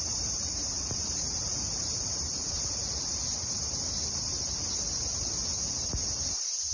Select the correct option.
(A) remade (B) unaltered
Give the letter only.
A